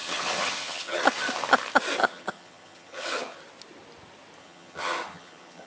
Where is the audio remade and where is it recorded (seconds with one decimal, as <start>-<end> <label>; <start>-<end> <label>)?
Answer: 0.0-1.0 remade; 1.0-2.0 recorded; 2.0-3.4 remade; 3.4-4.4 recorded; 4.4-5.7 remade